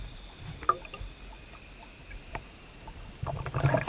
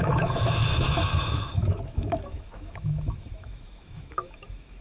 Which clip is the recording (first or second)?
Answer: first